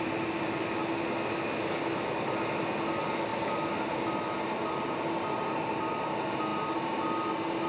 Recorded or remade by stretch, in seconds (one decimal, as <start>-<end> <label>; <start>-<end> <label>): 0.0-7.7 recorded